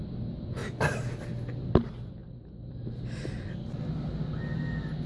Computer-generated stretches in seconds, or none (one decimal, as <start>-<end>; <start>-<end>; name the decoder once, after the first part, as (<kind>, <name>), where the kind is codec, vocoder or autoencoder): none

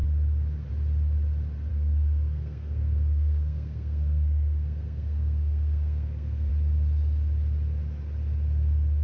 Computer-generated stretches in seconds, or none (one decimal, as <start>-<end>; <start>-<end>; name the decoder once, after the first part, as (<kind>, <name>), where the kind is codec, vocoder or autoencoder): 1.7-6.5 (codec, SNAC)

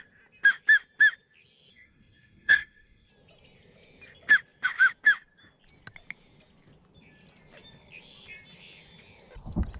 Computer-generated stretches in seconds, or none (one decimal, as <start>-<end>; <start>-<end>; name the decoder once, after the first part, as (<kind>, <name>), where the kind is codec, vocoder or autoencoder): 1.7-3.1 (codec, SNAC)

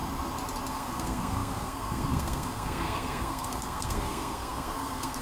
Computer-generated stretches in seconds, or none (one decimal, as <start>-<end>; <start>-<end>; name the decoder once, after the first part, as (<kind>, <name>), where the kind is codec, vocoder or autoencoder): 0.7-5.2 (codec, SNAC)